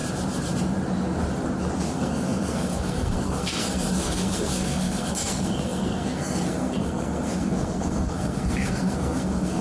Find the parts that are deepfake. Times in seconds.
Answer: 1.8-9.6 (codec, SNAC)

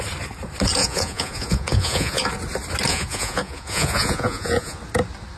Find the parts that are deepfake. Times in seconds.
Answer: 0.8-2.3 (vocoder, Vocos); 2.9-4.8

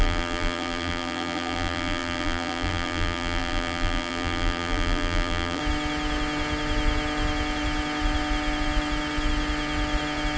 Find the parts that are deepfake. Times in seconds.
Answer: 0.0-5.6 (vocoder, BigVGAN v2)

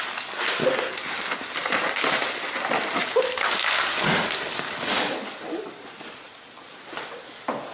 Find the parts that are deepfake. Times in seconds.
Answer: none